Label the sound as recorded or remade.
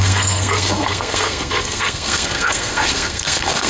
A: remade